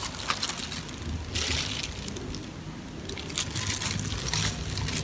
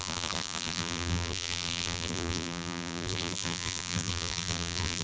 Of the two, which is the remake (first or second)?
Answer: second